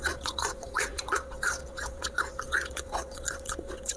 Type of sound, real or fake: fake